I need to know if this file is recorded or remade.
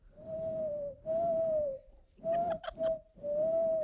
remade